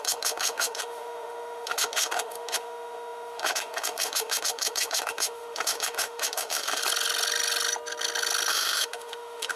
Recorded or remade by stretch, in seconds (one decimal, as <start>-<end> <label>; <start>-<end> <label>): 0.0-6.8 remade; 6.8-8.5 recorded; 8.5-9.6 remade